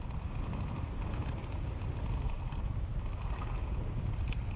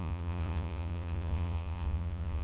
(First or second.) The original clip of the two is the first